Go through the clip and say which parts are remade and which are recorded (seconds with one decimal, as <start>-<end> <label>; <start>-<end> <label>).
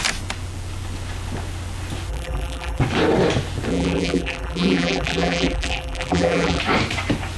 0.0-2.1 recorded; 2.1-2.8 remade; 2.8-3.7 recorded; 3.7-6.6 remade; 6.6-7.4 recorded